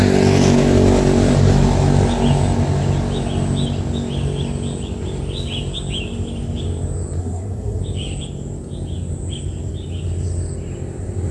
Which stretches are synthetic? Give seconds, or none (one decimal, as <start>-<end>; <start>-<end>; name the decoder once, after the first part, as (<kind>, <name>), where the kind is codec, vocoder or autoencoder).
7.2-7.8 (codec, SNAC)